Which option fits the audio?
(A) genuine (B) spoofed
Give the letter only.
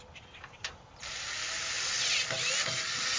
A